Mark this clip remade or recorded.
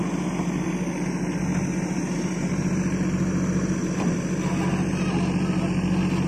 recorded